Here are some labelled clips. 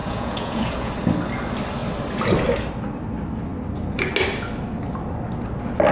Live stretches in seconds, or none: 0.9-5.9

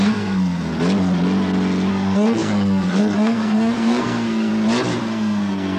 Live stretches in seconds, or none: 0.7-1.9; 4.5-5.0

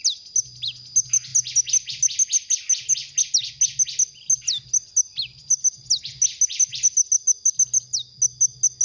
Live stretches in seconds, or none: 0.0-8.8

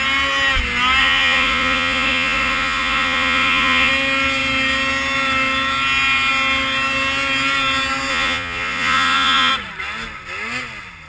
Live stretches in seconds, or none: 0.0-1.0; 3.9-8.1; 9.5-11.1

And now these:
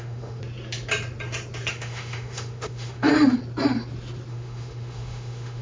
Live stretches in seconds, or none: 0.4-1.7; 3.1-4.3